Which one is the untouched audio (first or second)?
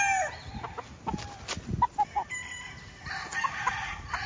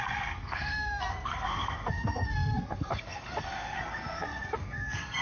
first